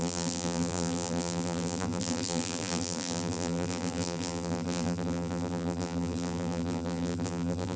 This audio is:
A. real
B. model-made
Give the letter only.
B